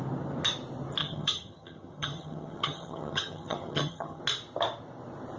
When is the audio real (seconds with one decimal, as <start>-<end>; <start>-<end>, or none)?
0.0-1.0; 4.2-5.4